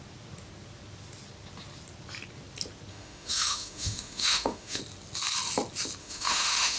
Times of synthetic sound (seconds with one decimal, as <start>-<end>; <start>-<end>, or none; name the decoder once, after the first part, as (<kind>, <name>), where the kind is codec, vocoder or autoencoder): 2.9-4.8 (autoencoder, DAC-VAE); 6.0-6.8